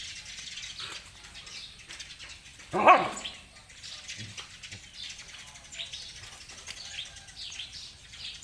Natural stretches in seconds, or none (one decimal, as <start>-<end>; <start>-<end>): 0.0-8.4